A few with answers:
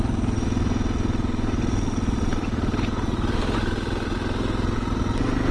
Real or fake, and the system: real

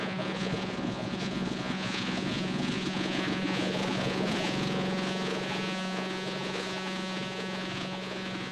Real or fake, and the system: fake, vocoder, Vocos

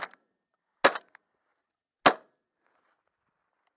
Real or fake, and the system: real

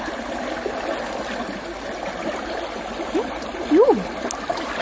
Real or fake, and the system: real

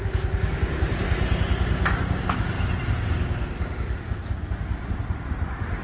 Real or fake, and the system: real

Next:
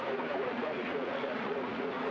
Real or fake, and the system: fake, vocoder, Vocos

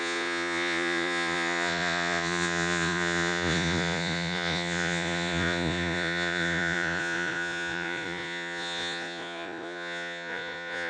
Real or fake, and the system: fake, vocoder, Vocos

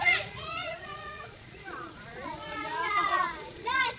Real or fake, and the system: fake, vocoder, Vocos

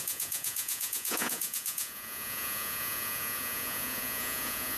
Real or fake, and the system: fake, vocoder, Vocos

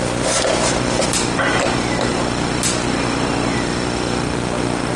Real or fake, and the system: real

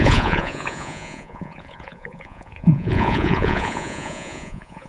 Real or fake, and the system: fake, vocoder, Vocos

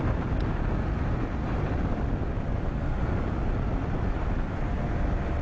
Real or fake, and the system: real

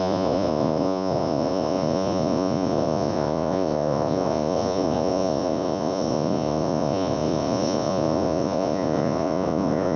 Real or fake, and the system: fake, vocoder, Vocos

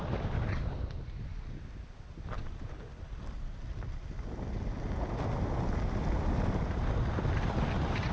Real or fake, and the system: real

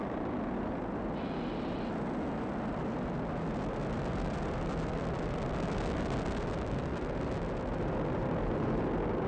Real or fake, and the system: real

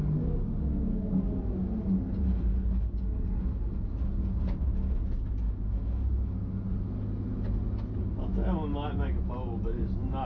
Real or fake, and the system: real